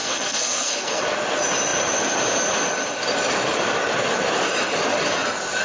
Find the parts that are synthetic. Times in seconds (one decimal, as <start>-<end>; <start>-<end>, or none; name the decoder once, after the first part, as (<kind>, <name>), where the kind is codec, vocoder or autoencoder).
0.0-1.0 (codec, SNAC)